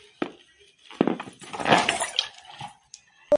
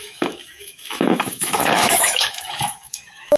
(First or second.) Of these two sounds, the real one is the first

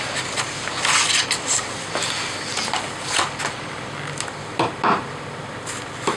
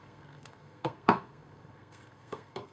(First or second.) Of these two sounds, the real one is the first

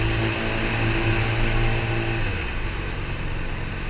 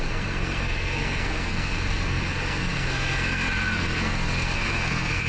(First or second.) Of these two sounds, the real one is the first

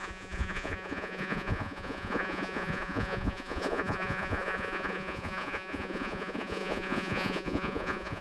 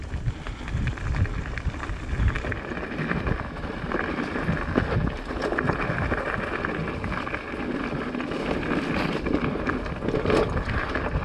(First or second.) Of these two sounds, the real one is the second